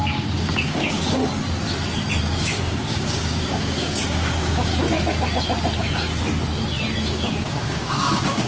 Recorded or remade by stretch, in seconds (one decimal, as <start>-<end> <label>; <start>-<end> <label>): 0.0-1.2 remade; 1.2-2.2 recorded; 2.2-4.7 remade; 4.7-7.0 recorded; 7.0-8.5 remade